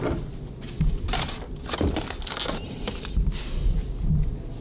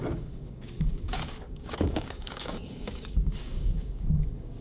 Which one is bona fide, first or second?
first